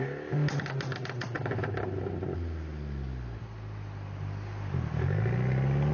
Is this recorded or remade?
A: recorded